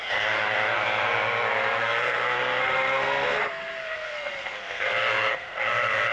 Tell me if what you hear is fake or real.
fake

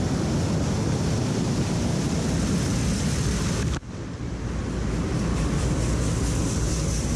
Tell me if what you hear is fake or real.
real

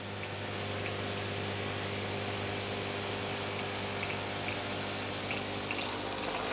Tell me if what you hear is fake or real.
real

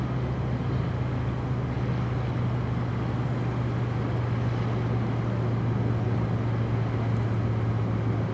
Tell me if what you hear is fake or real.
real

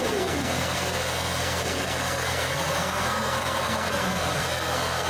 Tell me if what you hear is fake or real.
fake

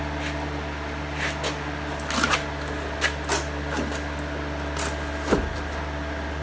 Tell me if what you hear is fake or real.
real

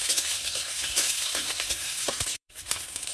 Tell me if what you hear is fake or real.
fake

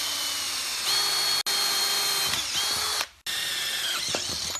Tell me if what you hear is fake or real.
real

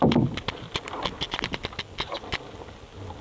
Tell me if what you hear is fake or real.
real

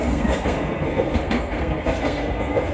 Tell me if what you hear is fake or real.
fake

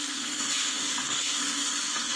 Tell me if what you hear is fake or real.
fake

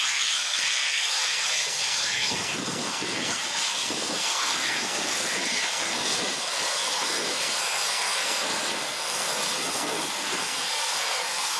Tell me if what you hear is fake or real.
fake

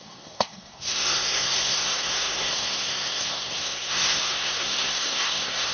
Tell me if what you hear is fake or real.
fake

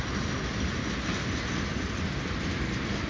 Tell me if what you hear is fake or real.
real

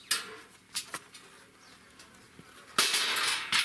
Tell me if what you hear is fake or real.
real